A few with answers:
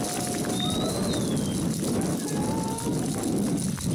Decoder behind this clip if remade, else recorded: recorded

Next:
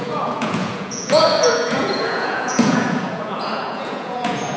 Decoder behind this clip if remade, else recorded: remade, vocoder, Vocos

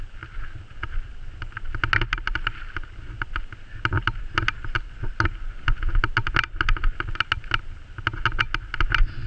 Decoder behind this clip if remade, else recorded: recorded